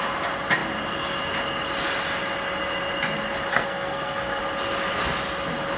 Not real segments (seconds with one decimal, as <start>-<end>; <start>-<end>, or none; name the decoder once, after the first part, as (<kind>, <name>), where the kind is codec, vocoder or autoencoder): 3.5-4.4 (codec, SNAC)